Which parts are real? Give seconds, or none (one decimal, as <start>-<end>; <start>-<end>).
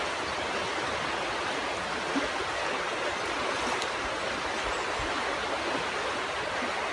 0.0-6.9